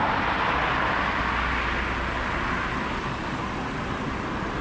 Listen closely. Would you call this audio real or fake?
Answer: real